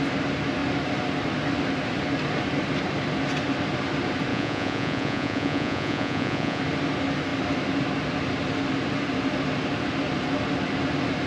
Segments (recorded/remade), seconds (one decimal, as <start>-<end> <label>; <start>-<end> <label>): 0.0-4.3 recorded; 4.3-6.6 remade; 6.6-11.3 recorded